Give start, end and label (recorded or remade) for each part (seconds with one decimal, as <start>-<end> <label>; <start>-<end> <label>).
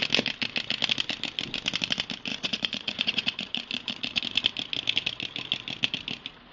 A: 0.0-2.3 recorded; 2.3-4.2 remade; 4.2-6.5 recorded